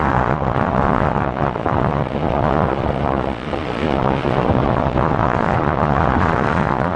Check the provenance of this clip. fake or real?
fake